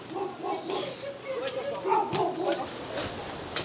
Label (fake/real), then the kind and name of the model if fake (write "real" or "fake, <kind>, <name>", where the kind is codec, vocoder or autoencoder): real